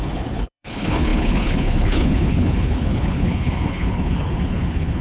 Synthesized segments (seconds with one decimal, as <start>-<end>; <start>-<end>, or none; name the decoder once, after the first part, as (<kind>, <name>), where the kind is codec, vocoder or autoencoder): 0.0-5.0 (codec, HILCodec)